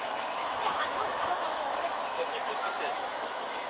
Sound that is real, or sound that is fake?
fake